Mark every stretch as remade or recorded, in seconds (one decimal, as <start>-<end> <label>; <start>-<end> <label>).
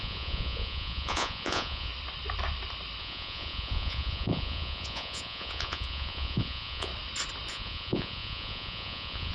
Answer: 0.0-1.9 remade; 1.9-3.0 recorded; 3.0-6.9 remade; 6.9-7.5 recorded; 7.5-9.3 remade